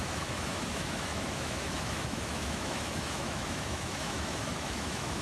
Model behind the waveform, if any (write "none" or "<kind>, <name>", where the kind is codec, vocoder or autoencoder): autoencoder, DAC-VAE